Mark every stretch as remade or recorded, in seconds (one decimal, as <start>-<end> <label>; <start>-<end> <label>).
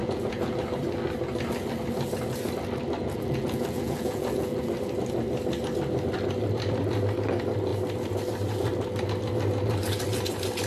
0.0-0.6 remade; 0.6-3.0 recorded; 3.0-4.6 remade; 4.6-10.7 recorded